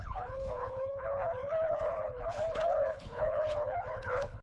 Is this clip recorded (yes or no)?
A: no